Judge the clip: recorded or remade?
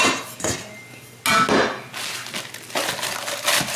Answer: recorded